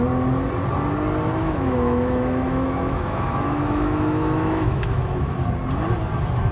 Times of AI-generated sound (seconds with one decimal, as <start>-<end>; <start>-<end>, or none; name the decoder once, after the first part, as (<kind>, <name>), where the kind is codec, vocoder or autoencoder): 1.4-5.3 (autoencoder, DAC-VAE)